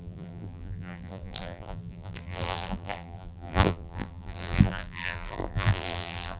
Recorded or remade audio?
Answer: remade